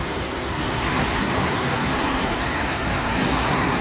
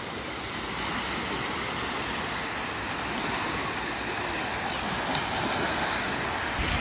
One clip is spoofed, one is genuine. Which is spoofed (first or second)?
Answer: first